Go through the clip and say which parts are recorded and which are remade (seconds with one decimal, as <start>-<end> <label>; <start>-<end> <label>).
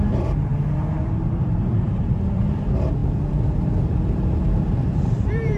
0.0-0.5 remade; 0.5-1.0 recorded; 1.0-3.0 remade; 3.0-5.1 recorded; 5.1-5.6 remade